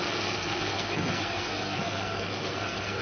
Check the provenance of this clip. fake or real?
fake